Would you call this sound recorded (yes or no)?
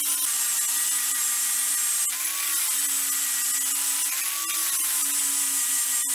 yes